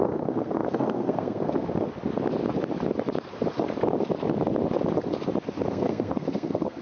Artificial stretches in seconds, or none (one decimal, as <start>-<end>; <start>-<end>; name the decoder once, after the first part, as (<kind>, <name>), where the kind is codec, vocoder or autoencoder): 0.0-1.9 (codec, SNAC); 5.7-6.8